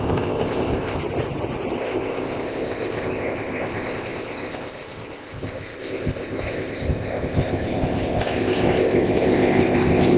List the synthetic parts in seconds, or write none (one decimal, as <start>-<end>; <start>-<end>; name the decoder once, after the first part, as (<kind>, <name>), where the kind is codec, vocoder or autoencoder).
0.0-1.0 (codec, ZipCodec); 1.8-10.2